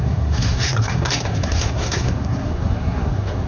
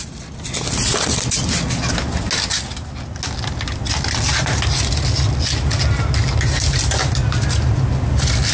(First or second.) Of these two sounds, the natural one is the second